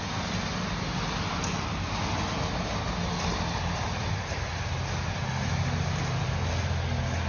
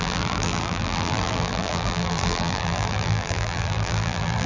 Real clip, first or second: first